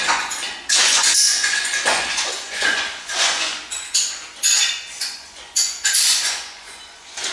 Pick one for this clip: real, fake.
fake